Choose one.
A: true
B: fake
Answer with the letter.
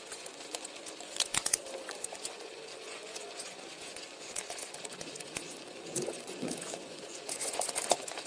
B